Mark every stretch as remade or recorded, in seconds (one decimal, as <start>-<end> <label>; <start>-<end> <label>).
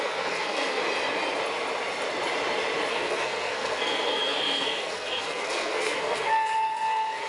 0.0-0.8 remade; 0.8-2.9 recorded; 2.9-7.3 remade